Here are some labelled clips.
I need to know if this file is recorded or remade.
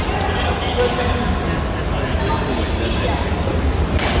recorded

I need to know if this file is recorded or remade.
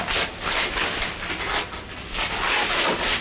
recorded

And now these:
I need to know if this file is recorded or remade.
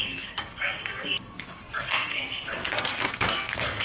remade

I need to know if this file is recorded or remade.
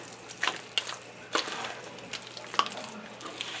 recorded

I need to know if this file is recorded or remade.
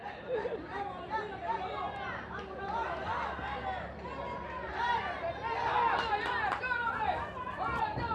recorded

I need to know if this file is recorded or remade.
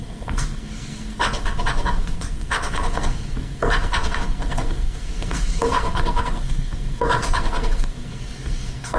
remade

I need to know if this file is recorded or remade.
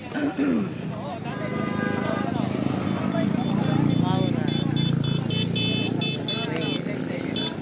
recorded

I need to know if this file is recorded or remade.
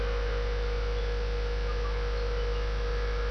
recorded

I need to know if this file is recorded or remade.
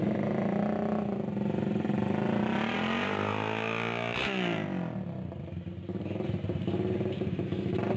recorded